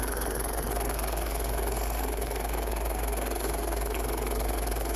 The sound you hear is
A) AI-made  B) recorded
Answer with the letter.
A